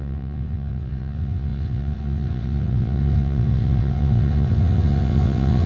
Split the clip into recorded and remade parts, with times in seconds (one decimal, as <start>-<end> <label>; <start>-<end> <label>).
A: 0.0-5.7 remade